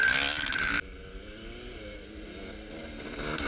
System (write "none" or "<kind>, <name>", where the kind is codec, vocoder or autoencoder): none